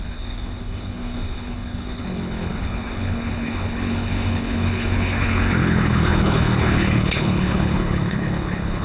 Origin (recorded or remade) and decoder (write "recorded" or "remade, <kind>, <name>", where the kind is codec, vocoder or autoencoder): remade, codec, HILCodec